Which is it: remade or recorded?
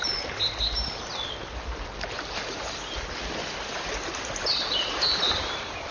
recorded